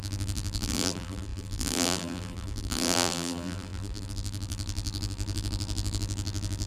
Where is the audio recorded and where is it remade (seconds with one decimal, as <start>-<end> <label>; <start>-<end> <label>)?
0.0-6.7 remade